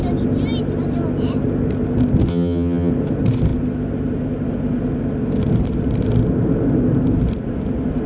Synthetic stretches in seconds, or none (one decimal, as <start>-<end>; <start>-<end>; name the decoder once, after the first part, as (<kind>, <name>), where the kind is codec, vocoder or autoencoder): 2.3-2.9 (vocoder, HiFi-GAN)